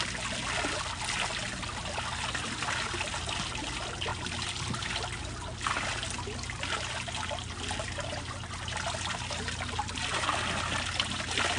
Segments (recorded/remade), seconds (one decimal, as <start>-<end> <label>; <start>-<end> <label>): 0.0-11.6 recorded